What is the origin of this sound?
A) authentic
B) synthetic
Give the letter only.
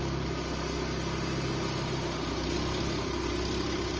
A